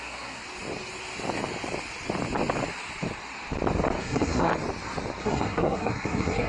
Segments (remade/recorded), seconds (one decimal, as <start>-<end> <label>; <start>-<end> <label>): 0.0-0.4 remade; 0.4-4.0 recorded; 4.0-4.5 remade; 4.5-5.2 recorded; 5.2-6.5 remade